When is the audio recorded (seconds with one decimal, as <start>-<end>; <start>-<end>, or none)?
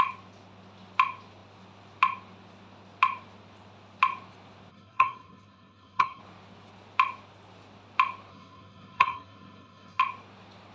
0.0-4.7; 6.2-8.3; 10.0-10.7